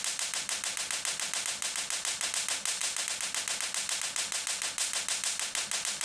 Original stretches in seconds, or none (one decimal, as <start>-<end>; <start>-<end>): 0.0-6.0